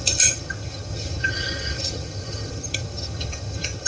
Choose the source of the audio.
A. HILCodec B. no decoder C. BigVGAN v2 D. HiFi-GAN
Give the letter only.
D